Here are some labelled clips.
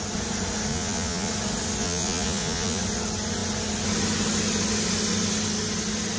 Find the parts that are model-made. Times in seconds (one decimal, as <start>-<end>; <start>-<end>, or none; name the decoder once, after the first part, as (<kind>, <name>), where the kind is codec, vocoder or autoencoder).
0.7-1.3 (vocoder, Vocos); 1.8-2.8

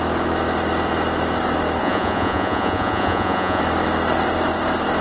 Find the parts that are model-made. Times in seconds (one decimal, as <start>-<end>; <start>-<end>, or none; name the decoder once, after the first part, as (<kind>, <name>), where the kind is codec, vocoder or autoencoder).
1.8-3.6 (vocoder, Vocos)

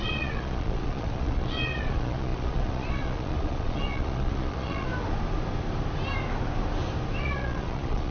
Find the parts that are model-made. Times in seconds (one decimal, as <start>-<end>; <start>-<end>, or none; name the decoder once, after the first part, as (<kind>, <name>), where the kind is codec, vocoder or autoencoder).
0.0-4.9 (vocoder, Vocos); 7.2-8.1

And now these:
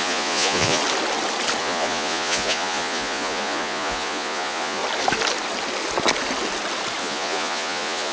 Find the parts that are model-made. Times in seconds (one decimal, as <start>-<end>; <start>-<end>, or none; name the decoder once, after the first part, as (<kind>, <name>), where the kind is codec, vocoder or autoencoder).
0.0-0.8 (vocoder, Vocos); 1.6-4.8; 7.0-8.1

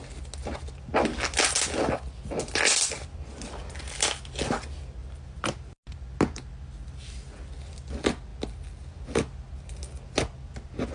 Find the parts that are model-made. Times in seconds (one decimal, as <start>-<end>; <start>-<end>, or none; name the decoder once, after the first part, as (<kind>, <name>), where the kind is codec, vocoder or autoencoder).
none